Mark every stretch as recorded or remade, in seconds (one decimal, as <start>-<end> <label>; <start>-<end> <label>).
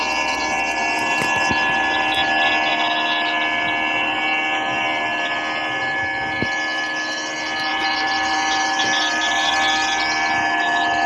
0.0-7.7 recorded; 7.7-9.5 remade; 9.5-11.1 recorded